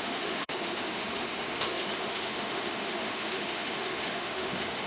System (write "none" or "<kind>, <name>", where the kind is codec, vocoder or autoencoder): autoencoder, DAC-VAE